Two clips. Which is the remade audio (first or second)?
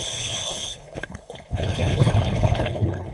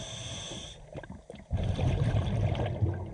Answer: first